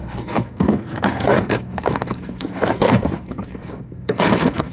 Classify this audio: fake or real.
fake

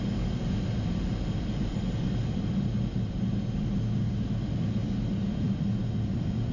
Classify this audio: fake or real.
real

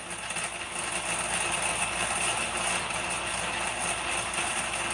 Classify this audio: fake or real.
real